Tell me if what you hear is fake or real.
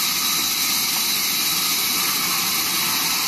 real